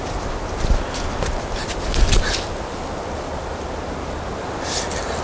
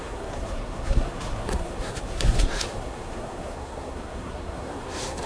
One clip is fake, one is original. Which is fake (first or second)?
second